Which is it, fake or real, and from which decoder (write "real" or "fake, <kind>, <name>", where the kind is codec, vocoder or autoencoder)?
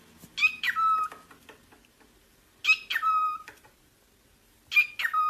real